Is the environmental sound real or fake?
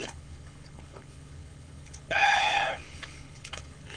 fake